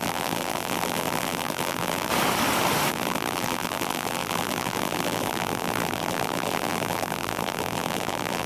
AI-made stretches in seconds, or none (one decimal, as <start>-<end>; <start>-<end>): 0.0-2.1; 2.9-8.5